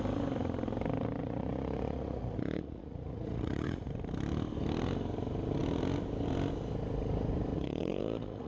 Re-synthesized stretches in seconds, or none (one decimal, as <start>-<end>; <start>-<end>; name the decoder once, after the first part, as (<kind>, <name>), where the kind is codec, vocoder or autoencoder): 1.2-3.9 (vocoder, Vocos); 7.5-8.5